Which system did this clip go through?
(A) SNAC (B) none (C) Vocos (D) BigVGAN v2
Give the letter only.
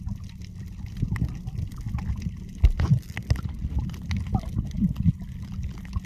B